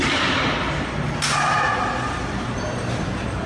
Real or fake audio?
real